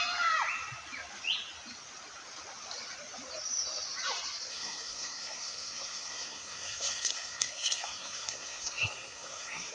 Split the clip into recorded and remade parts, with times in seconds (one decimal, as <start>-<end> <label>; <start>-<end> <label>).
0.0-4.5 recorded; 4.5-9.7 remade